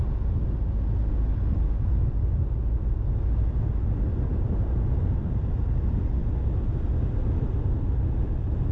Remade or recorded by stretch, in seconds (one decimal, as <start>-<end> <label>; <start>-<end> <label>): 0.0-8.7 recorded